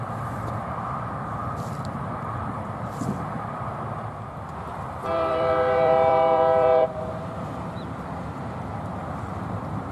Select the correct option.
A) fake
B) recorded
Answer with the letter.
A